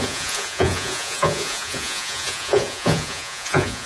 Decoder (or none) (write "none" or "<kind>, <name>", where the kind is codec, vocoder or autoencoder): vocoder, Vocos